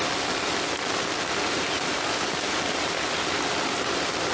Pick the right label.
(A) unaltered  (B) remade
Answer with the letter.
A